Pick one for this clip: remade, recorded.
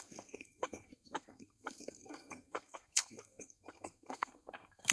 remade